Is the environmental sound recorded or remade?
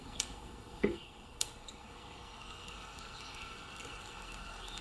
remade